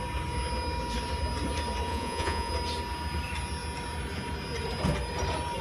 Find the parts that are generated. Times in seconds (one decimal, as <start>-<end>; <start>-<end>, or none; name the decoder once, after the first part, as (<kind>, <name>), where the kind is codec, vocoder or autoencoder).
1.9-2.5 (vocoder, Vocos)